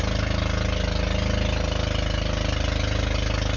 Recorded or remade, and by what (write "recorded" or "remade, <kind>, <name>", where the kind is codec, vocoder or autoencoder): recorded